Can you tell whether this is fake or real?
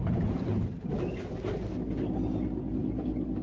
real